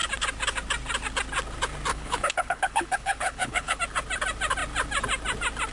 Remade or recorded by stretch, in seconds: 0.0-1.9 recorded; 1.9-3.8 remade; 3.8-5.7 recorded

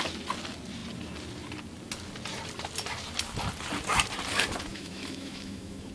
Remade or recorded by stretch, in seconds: 0.0-4.7 recorded; 4.7-5.9 remade

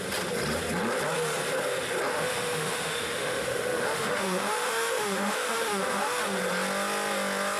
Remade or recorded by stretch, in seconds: 0.0-2.1 recorded; 2.1-6.2 remade; 6.2-7.6 recorded

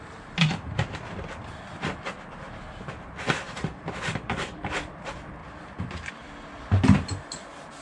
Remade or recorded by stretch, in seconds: 0.0-4.1 recorded; 4.1-4.6 remade; 4.6-7.8 recorded

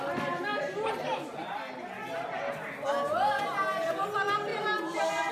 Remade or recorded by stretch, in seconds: 0.0-4.5 recorded; 4.5-5.3 remade

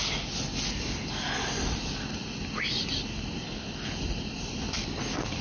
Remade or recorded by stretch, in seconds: 0.0-5.4 recorded

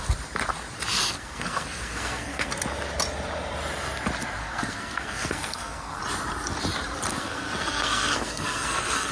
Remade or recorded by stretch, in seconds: 0.0-0.9 recorded; 0.9-2.5 remade; 2.5-4.4 recorded; 4.4-6.0 remade; 6.0-7.1 recorded; 7.1-9.1 remade